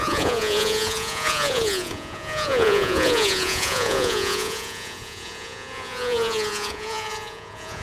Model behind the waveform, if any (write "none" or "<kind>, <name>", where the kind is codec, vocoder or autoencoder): vocoder, Vocos